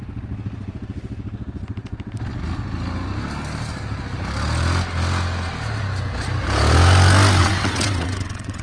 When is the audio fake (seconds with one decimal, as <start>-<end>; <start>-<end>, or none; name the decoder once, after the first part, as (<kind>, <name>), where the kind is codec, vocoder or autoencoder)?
7.4-8.6 (vocoder, WaveNeXt)